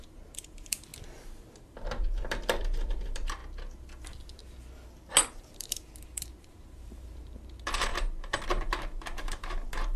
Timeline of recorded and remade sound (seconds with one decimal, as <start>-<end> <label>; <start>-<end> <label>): 0.0-0.9 remade; 0.9-1.6 recorded; 1.6-3.4 remade; 3.4-5.4 recorded; 5.4-10.0 remade